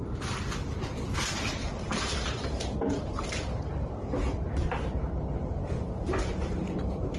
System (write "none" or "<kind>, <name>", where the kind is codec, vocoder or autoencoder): vocoder, BigVGAN v2